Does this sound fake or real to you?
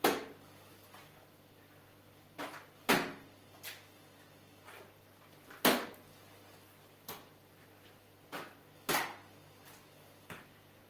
real